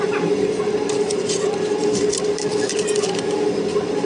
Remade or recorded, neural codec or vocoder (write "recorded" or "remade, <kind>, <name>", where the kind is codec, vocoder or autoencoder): recorded